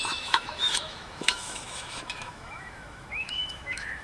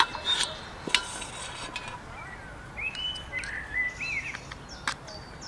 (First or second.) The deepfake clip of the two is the first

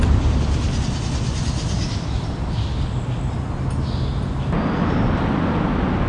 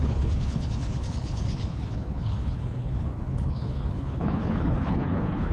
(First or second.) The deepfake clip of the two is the second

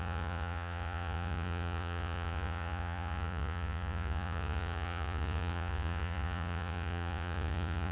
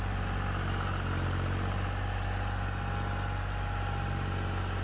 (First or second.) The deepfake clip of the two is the first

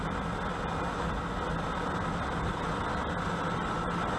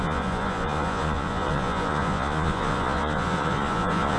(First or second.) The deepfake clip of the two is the second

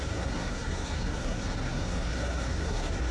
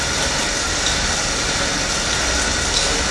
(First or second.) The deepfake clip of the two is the first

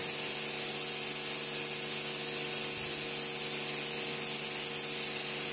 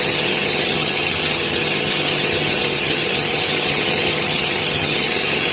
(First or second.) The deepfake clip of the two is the second